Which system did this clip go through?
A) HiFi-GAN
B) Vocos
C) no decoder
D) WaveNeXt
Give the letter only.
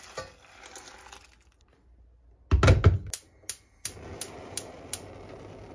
C